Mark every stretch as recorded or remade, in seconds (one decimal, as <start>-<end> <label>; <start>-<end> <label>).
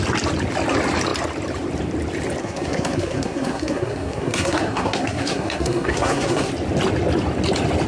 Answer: 0.0-2.4 recorded; 2.4-6.5 remade; 6.5-7.9 recorded